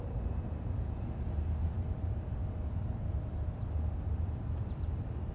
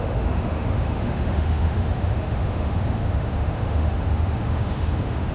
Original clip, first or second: first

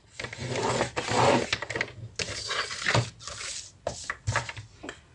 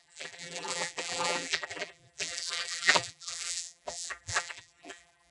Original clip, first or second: first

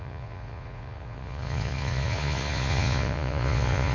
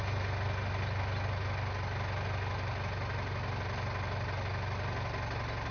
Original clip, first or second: second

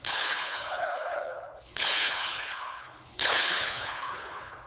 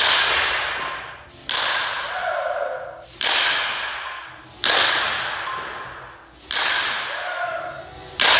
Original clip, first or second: second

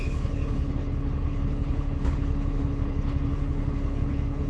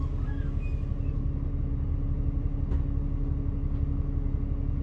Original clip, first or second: second